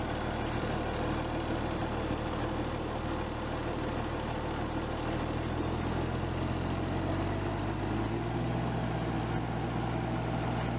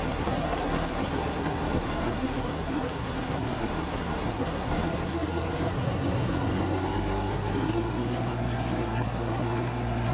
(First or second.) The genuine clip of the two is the first